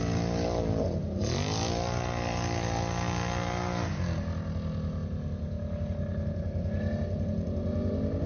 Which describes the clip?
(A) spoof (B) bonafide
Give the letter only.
B